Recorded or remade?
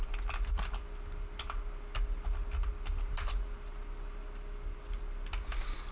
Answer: recorded